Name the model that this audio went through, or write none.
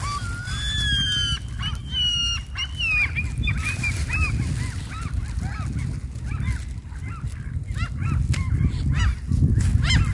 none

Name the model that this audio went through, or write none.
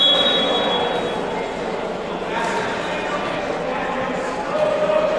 none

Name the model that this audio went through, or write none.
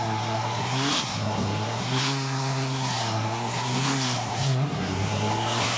codec, SNAC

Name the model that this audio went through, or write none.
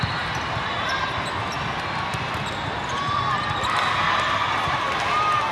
none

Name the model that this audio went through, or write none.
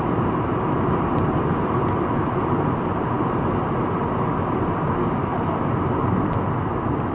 none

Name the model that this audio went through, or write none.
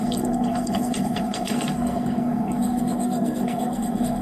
codec, SNAC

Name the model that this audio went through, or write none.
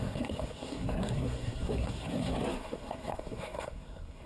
codec, SNAC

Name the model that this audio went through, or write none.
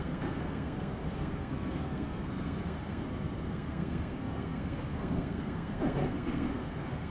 codec, SNAC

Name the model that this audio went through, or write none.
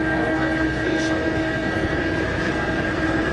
codec, SNAC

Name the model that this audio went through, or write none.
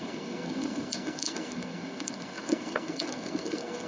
codec, SNAC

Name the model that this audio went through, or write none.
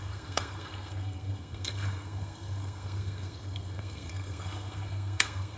codec, SNAC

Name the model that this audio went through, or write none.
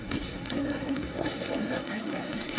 codec, SNAC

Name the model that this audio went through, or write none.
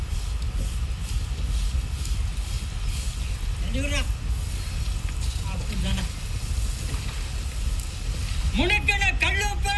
none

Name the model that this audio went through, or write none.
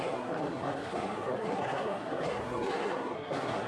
codec, SNAC